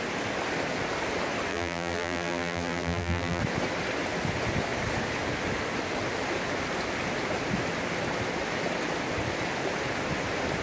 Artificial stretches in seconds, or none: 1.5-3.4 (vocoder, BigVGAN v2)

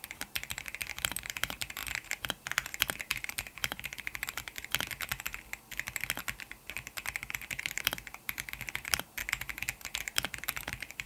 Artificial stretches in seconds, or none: 0.0-1.8 (vocoder, BigVGAN v2); 3.0-4.6; 7.6-9.2; 10.0-11.1

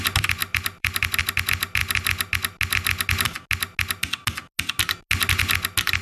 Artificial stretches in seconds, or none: 0.4-1.2 (vocoder, BigVGAN v2)

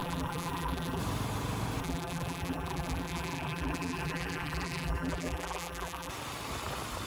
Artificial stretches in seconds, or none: 0.0-1.0 (vocoder, BigVGAN v2); 1.8-6.1

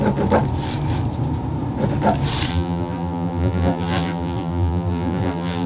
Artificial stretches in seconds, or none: 2.5-5.7 (vocoder, BigVGAN v2)